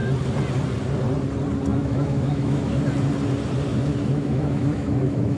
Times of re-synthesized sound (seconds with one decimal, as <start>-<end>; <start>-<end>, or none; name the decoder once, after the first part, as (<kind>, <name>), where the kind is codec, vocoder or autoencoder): 1.7-2.7 (autoencoder, DAC-VAE); 3.7-5.4